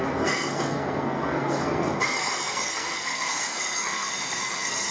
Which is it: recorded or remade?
remade